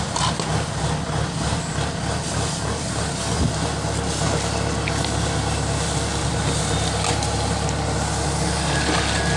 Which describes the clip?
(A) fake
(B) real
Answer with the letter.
B